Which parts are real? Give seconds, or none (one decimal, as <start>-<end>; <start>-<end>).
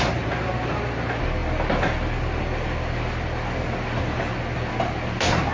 0.0-5.5